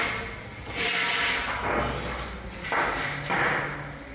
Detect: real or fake real